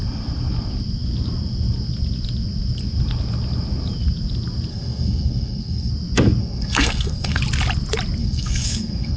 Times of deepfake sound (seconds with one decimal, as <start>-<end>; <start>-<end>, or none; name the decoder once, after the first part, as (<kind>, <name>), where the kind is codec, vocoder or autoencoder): 4.7-5.9 (codec, SNAC); 6.4-7.4; 8.2-9.2

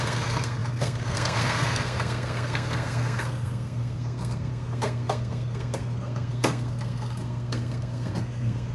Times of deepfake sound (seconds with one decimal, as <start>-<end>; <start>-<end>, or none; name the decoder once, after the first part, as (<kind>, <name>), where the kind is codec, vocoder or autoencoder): 0.0-8.7 (codec, SNAC)

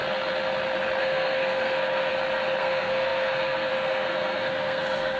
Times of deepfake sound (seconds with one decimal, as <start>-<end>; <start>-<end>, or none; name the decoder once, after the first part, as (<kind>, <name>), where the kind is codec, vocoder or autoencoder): 1.0-2.1 (codec, SNAC); 2.6-5.2

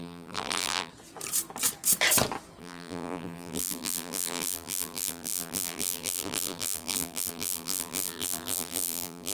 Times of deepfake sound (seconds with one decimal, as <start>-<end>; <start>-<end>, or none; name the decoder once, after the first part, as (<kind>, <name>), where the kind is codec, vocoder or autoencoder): 0.0-0.9 (vocoder, BigVGAN v2); 2.6-9.3

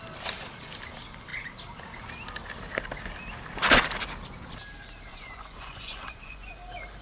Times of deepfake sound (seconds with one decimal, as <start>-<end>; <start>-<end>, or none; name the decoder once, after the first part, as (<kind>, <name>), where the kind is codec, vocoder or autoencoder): 5.1-6.5 (vocoder, Vocos)

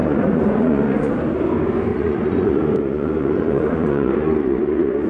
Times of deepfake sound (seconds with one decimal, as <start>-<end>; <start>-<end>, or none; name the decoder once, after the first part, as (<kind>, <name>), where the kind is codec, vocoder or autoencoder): 0.0-1.1 (vocoder, Vocos); 1.9-5.1